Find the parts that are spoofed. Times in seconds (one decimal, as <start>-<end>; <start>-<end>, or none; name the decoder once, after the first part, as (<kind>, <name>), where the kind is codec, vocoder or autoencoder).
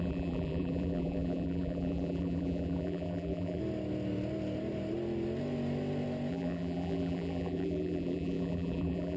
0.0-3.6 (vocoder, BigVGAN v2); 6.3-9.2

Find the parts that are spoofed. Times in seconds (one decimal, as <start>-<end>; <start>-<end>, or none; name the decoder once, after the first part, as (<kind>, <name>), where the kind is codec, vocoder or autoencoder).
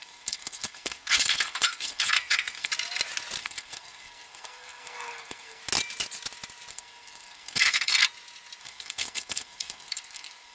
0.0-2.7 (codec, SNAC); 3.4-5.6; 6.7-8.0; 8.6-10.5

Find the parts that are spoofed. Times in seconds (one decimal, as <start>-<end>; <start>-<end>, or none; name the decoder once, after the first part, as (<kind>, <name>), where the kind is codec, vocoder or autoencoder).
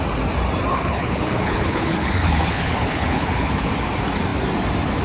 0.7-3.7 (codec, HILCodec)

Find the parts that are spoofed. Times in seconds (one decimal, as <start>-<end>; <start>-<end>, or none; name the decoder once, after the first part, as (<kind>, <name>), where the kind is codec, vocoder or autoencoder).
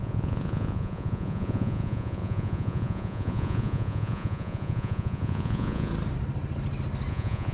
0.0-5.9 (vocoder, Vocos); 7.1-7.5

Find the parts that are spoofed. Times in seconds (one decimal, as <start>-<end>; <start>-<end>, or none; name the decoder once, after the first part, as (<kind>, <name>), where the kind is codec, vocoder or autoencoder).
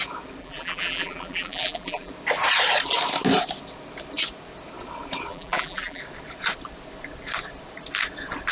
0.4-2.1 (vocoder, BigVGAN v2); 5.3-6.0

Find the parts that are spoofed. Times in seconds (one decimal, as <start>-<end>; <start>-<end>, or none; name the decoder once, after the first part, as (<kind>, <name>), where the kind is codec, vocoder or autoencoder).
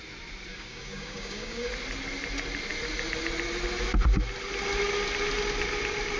0.5-1.7 (codec, DAC)